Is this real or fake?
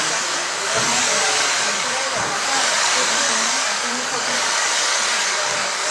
fake